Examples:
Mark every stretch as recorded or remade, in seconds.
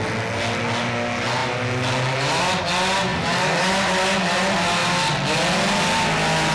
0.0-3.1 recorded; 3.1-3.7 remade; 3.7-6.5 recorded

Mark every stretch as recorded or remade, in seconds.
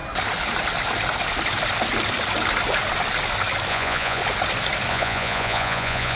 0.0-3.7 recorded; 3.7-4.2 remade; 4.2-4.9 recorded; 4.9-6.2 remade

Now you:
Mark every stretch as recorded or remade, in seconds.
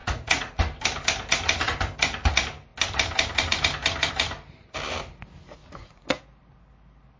0.0-0.6 remade; 0.6-5.6 recorded; 5.6-6.2 remade; 6.2-7.2 recorded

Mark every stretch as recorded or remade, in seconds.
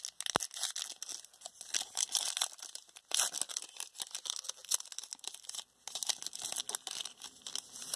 0.0-8.0 recorded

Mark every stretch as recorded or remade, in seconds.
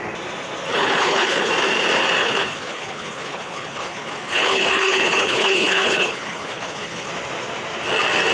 0.0-0.7 recorded; 0.7-1.5 remade; 1.5-2.2 recorded; 2.2-7.1 remade; 7.1-8.3 recorded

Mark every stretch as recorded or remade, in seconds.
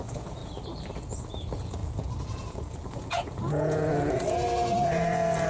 0.0-0.4 remade; 0.4-1.1 recorded; 1.1-5.5 remade